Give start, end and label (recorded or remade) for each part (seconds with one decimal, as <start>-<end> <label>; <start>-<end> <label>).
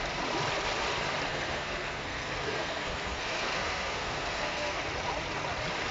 0.0-1.3 recorded; 1.3-4.8 remade; 4.8-5.9 recorded